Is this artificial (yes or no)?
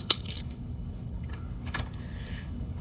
yes